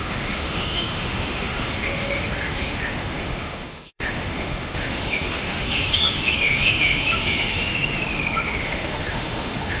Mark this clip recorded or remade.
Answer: remade